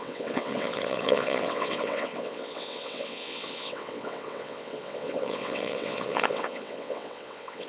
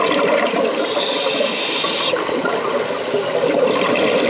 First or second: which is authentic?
second